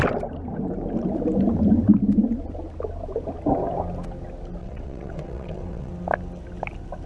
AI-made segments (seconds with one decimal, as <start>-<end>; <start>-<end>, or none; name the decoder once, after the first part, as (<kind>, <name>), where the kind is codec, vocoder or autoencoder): 4.6-5.9 (vocoder, WaveNeXt)